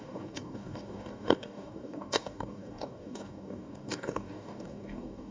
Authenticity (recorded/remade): remade